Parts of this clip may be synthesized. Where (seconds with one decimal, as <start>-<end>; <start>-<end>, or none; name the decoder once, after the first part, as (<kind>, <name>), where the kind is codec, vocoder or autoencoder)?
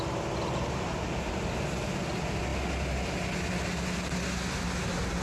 none